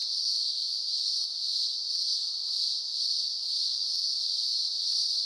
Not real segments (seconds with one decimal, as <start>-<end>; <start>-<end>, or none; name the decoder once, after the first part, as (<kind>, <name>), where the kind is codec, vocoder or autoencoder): 4.5-5.3 (vocoder, BigVGAN v2)